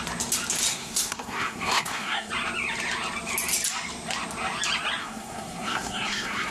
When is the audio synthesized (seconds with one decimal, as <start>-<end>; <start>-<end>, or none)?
0.7-2.3; 5.0-6.5